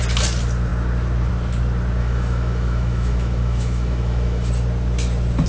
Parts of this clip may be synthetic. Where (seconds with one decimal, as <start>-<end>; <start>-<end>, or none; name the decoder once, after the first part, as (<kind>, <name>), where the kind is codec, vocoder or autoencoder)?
2.0-4.5 (autoencoder, DAC-VAE)